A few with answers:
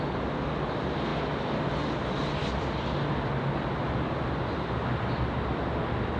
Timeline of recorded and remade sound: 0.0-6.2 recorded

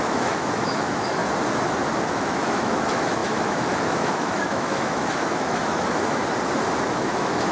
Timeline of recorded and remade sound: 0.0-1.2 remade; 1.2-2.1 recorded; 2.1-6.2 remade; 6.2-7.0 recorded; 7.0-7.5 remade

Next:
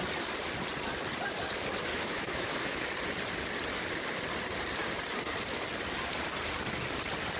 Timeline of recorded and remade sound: 0.0-1.9 recorded; 1.9-2.8 remade; 2.8-7.4 recorded

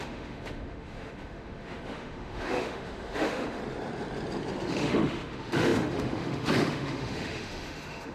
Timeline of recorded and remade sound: 0.0-3.6 remade; 3.6-4.7 recorded; 4.7-8.1 remade

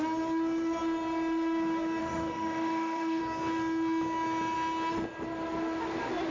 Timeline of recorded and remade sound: 0.0-2.0 recorded; 2.0-3.2 remade; 3.2-6.3 recorded

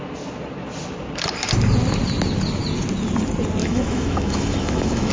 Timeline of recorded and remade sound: 0.0-3.6 recorded; 3.6-5.1 remade